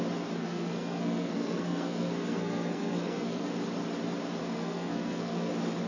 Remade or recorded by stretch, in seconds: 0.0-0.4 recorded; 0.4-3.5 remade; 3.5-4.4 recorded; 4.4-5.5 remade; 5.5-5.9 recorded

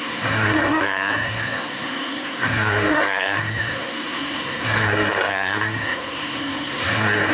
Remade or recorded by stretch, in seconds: 0.0-7.3 remade